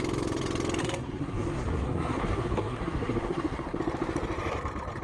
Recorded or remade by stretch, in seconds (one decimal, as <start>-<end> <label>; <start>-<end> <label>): 0.0-0.8 recorded; 0.8-3.8 remade; 3.8-5.0 recorded